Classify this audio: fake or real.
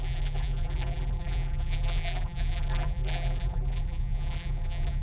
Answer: fake